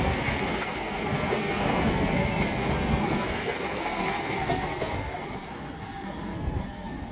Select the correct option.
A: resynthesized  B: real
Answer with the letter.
A